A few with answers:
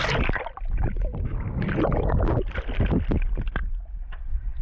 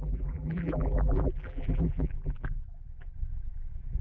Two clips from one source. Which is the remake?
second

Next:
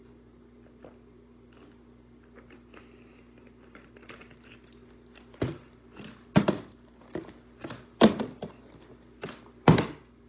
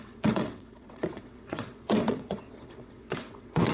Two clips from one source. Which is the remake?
second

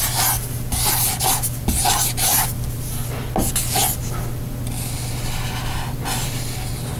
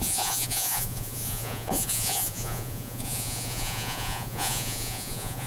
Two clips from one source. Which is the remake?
second